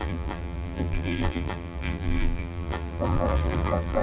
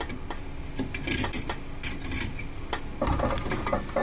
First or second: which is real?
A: second